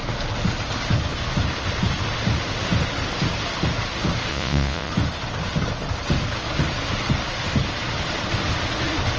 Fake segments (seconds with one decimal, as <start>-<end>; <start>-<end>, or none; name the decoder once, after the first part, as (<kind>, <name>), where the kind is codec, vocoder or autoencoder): 4.3-4.9 (vocoder, Vocos)